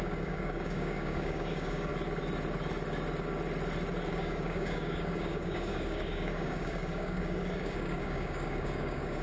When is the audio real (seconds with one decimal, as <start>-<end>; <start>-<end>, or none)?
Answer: 1.9-4.1